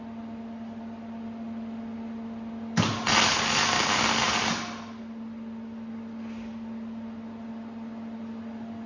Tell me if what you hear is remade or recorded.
recorded